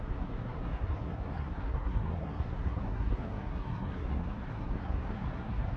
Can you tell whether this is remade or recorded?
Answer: remade